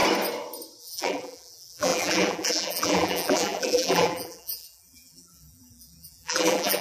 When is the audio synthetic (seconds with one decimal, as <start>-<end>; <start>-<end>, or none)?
0.8-6.8

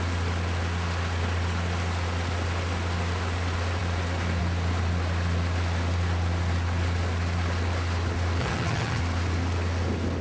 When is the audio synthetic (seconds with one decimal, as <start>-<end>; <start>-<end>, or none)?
8.4-9.0